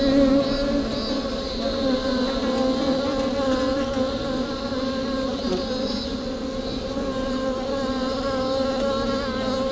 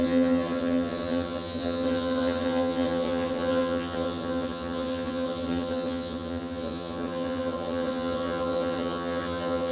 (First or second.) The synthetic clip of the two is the second